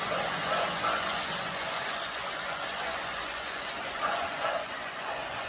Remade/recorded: remade